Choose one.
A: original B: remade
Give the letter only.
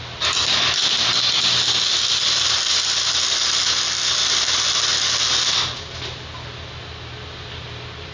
A